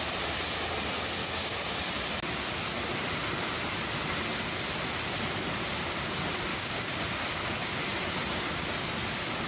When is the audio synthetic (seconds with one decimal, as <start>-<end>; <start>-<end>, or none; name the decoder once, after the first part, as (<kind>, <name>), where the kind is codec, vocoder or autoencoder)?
1.2-1.7 (codec, DAC); 6.5-7.0